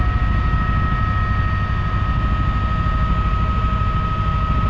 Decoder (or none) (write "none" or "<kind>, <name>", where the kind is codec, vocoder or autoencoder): none